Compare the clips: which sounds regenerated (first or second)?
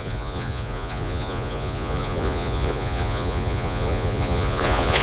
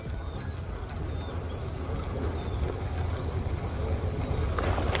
first